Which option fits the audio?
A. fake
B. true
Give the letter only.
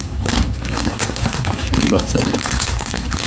A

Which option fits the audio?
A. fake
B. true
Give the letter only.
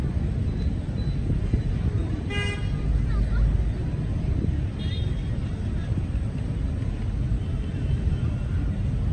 B